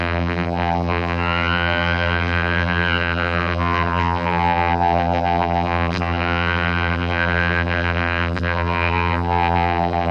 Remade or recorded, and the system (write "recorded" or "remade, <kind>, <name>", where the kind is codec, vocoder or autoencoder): remade, vocoder, BigVGAN v2